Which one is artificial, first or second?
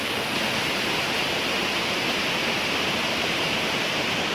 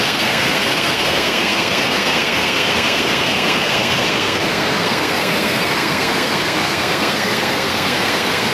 second